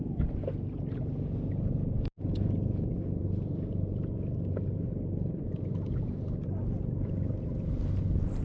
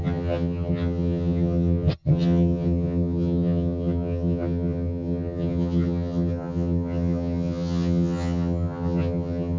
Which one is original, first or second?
first